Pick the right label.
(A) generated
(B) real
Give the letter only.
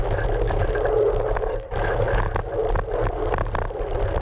B